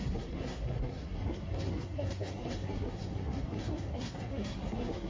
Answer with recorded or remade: remade